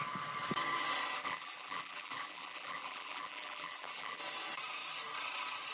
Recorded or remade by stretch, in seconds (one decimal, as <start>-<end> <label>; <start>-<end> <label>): 0.0-1.2 recorded; 1.2-4.2 remade; 4.2-5.7 recorded